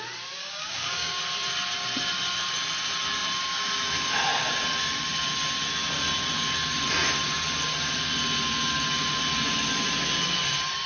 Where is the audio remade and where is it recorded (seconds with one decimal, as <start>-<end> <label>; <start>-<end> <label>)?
0.0-0.4 recorded; 0.4-1.2 remade; 1.2-10.9 recorded